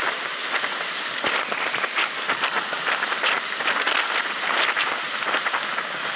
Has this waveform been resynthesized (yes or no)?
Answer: no